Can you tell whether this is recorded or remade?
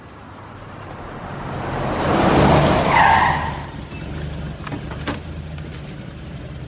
recorded